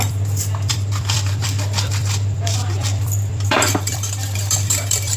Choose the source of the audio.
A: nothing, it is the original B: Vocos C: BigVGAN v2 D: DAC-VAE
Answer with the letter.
C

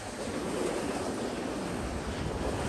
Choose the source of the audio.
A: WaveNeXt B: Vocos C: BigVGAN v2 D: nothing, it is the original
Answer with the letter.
D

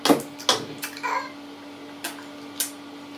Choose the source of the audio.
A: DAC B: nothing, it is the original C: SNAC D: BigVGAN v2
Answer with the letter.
B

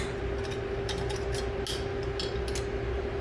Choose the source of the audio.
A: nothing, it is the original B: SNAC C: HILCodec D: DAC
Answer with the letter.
A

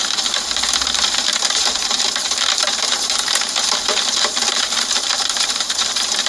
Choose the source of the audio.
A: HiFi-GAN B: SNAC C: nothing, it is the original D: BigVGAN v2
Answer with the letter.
D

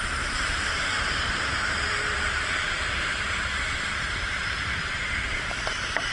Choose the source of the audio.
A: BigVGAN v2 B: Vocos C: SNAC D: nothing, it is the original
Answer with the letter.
A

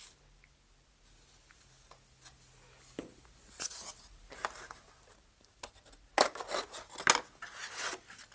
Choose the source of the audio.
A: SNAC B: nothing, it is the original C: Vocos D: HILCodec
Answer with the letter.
B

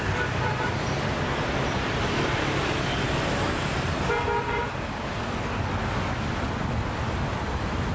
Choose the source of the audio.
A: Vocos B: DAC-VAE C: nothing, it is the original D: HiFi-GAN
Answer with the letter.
C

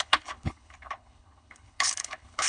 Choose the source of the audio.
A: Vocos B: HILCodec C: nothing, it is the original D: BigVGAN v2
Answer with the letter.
B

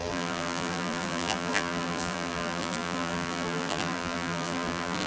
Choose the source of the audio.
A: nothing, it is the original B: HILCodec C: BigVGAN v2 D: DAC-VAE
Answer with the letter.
C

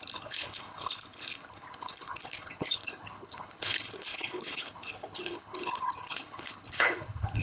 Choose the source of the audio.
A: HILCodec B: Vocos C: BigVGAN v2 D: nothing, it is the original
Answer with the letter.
A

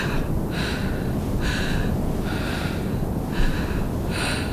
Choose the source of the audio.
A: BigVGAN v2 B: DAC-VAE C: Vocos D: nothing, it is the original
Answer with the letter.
D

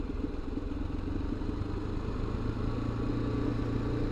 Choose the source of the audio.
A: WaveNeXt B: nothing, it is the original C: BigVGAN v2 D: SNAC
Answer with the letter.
B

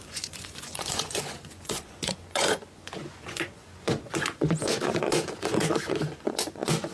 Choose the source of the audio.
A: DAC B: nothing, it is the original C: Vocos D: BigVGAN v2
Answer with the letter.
C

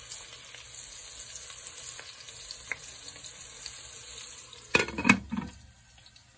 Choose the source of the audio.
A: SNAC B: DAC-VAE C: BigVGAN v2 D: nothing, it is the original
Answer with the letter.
D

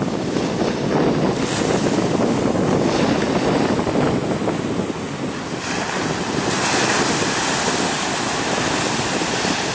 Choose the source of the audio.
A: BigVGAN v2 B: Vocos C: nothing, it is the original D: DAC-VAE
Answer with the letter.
C